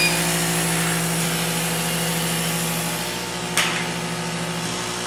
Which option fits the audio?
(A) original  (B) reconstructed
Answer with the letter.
A